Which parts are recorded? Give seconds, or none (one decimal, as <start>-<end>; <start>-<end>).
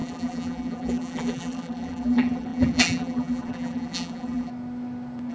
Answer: 4.5-5.3